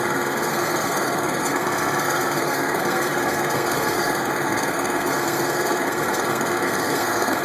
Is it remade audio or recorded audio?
remade